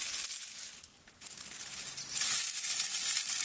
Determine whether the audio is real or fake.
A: real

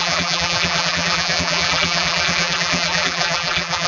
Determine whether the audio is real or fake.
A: fake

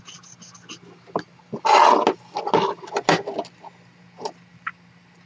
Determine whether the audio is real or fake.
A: real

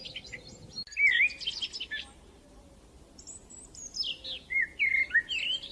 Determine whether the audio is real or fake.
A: real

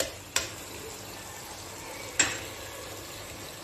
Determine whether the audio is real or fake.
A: real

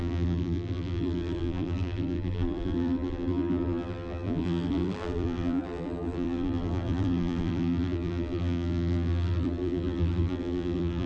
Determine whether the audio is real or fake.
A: fake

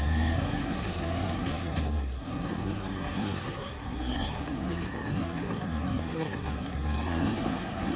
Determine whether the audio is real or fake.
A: fake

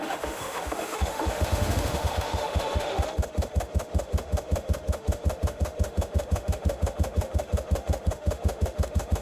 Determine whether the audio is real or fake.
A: fake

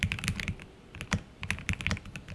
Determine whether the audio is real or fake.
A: real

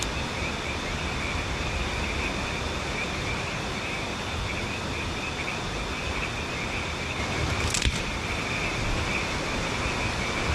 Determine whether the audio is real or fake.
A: real